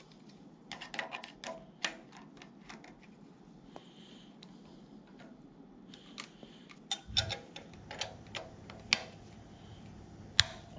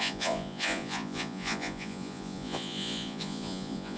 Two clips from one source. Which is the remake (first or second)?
second